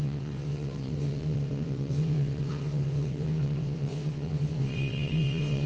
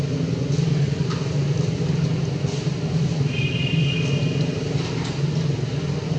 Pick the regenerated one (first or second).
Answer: first